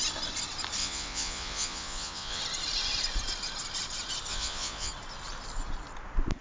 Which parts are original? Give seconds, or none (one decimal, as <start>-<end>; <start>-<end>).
0.0-0.8; 2.4-4.3; 4.9-6.4